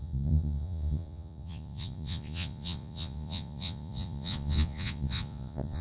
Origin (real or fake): fake